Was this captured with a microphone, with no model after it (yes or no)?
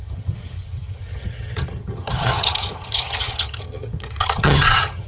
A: no